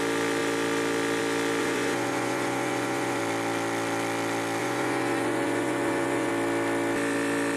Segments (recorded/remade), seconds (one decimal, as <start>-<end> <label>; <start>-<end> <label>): 0.0-1.6 recorded; 1.6-3.2 remade; 3.2-4.6 recorded; 4.6-6.3 remade; 6.3-7.6 recorded